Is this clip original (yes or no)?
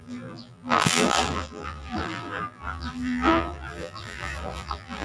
no